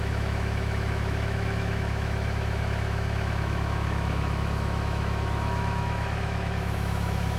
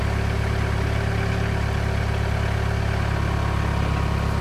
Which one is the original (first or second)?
second